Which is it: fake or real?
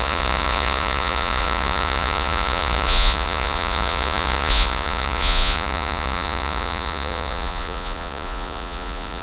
fake